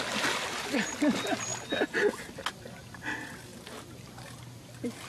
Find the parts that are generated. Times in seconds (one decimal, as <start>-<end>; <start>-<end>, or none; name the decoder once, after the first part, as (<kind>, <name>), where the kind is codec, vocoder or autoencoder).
none